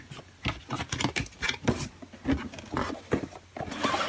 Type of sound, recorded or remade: recorded